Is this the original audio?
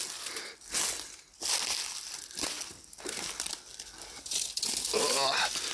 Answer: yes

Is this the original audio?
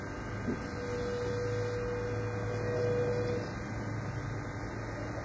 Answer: yes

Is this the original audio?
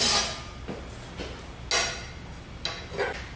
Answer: yes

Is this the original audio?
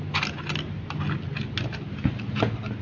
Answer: yes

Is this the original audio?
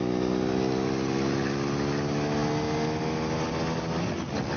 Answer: yes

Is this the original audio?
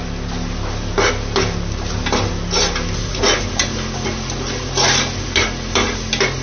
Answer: yes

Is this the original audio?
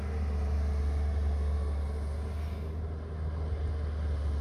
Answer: yes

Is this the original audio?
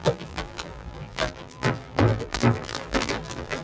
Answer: no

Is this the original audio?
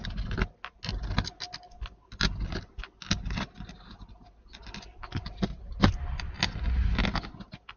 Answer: yes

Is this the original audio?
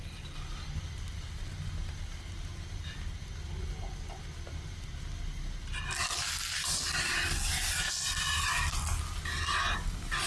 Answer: yes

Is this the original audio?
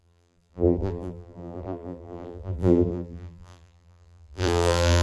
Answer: no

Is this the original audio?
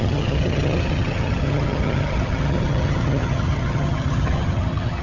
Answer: no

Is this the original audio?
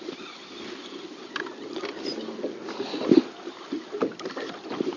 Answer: yes